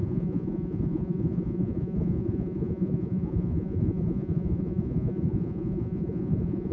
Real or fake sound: fake